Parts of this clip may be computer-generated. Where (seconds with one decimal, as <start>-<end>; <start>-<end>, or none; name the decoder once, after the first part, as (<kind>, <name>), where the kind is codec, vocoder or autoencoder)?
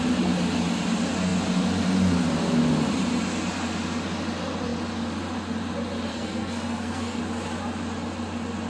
6.1-7.2 (codec, SNAC)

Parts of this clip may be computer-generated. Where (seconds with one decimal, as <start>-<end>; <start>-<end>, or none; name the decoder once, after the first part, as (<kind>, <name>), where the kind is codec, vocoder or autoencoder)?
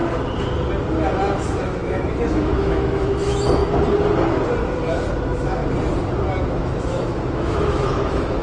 1.3-3.6 (autoencoder, DAC-VAE); 5.1-5.6; 6.5-8.4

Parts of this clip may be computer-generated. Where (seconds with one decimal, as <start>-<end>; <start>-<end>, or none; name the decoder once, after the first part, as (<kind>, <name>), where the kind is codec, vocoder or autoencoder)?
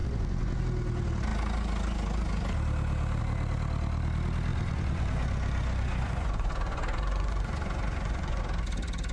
0.0-0.6 (vocoder, Vocos); 4.5-8.4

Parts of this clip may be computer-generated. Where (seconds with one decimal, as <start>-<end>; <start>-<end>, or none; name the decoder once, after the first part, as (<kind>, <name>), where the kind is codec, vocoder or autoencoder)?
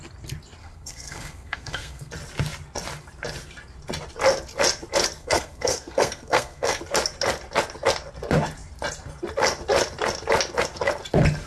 0.6-2.1 (codec, SNAC); 5.2-6.8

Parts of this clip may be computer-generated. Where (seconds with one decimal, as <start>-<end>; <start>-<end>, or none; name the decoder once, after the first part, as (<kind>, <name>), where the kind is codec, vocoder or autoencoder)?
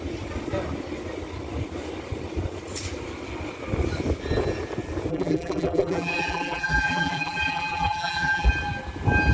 5.1-8.5 (vocoder, BigVGAN v2)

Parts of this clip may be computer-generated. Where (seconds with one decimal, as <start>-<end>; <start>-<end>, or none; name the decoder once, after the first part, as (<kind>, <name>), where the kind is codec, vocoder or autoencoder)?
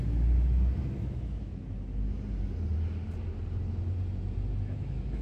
0.0-1.5 (autoencoder, DAC-VAE); 4.6-5.2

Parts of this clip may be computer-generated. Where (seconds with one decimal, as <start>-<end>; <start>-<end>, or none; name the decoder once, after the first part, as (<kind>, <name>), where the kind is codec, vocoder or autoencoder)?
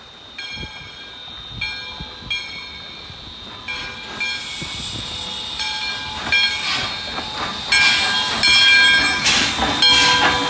none